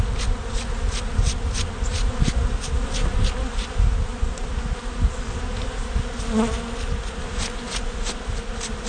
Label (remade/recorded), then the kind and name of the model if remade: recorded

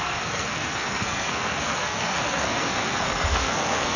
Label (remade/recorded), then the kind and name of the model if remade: remade, codec, SNAC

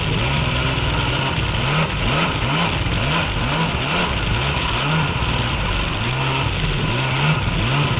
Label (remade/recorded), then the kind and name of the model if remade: recorded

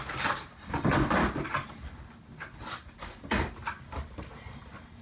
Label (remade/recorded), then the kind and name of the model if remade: recorded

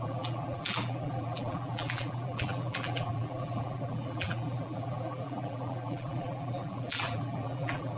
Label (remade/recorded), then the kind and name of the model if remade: remade, vocoder, BigVGAN v2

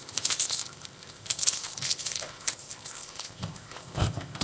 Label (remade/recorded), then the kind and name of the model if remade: remade, codec, ZipCodec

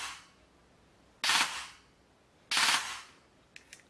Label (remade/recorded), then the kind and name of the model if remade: recorded